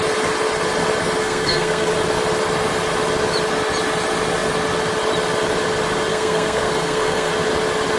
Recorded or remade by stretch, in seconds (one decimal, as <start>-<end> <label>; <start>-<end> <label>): 0.0-1.2 recorded; 1.2-1.9 remade; 1.9-6.1 recorded; 6.1-7.3 remade; 7.3-8.0 recorded